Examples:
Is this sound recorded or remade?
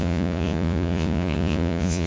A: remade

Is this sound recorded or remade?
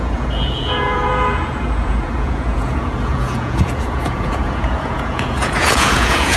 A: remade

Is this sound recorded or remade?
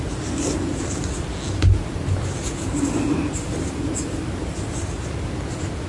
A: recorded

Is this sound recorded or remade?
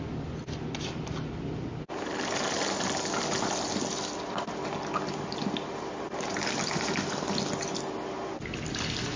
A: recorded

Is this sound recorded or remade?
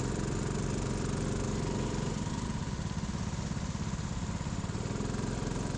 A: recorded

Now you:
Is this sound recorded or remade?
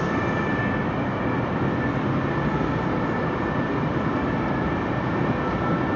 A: recorded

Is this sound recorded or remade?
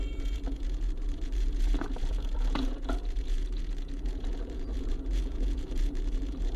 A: remade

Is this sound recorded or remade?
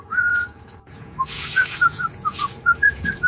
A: remade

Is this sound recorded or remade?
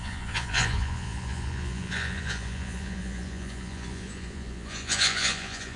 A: remade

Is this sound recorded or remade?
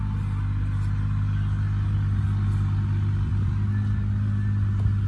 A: recorded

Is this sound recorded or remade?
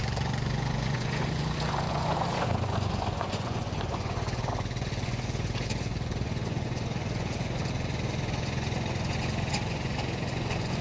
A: remade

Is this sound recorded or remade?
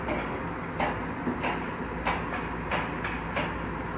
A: recorded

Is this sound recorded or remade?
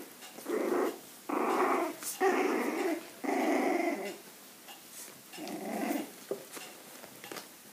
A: recorded